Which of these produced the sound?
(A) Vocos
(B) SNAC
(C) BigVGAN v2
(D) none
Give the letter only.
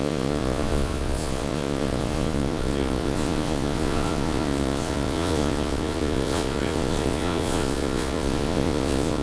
A